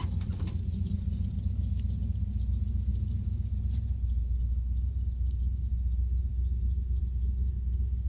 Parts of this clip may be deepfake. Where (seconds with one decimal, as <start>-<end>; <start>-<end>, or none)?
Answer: none